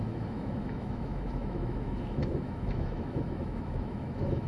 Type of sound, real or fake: fake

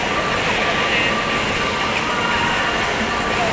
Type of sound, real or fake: real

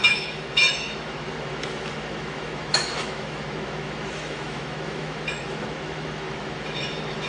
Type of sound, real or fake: fake